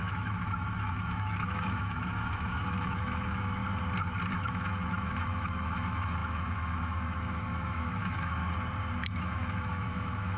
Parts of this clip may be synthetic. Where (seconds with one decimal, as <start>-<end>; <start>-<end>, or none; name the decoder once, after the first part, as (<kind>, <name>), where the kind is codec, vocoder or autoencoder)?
0.0-3.6 (autoencoder, DAC-VAE); 4.3-8.4; 9.2-10.4